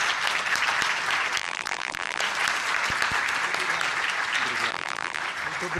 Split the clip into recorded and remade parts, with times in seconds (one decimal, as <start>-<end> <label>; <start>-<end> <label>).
0.0-1.4 recorded; 1.4-2.2 remade; 2.2-4.7 recorded; 4.7-5.2 remade; 5.2-5.8 recorded